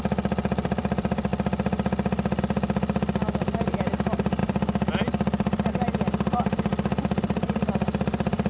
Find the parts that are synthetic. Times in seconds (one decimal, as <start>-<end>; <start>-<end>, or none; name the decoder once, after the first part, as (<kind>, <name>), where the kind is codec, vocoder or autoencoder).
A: 0.0-1.3 (vocoder, BigVGAN v2); 2.4-6.7; 7.2-8.5